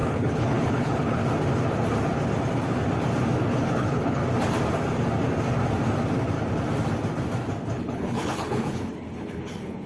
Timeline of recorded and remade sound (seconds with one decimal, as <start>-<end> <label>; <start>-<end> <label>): 0.0-1.2 remade; 1.2-3.5 recorded; 3.5-4.2 remade; 4.2-7.8 recorded; 7.8-9.9 remade